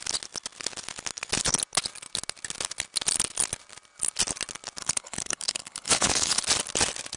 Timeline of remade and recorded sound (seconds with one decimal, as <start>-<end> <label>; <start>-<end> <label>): 0.0-4.8 recorded; 4.8-6.4 remade; 6.4-7.2 recorded